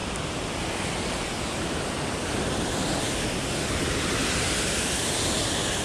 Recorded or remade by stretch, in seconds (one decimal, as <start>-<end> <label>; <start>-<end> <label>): 0.0-4.2 recorded; 4.2-5.1 remade; 5.1-5.8 recorded